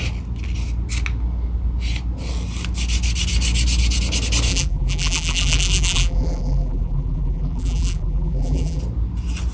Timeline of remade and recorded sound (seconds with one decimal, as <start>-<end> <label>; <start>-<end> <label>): 0.0-4.5 recorded; 4.5-8.8 remade; 8.8-9.5 recorded